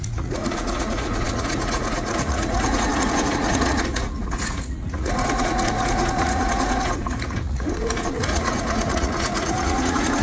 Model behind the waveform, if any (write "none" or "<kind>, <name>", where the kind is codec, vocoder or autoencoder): vocoder, Vocos